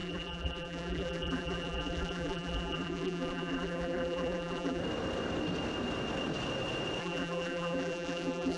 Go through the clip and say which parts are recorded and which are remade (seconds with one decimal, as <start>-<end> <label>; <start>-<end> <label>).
0.0-4.8 remade; 4.8-7.0 recorded; 7.0-8.6 remade